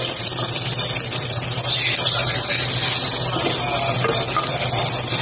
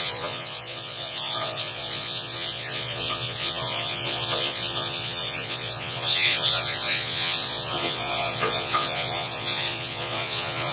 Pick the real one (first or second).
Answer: first